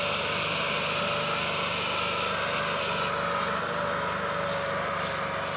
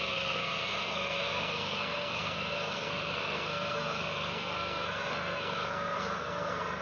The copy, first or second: second